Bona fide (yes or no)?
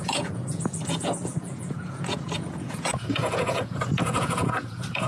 no